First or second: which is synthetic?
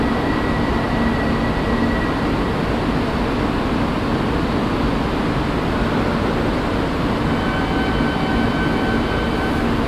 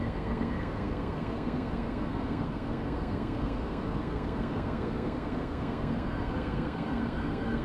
second